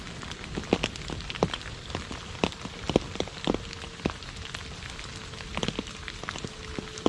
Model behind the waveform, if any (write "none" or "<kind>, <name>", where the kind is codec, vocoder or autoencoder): none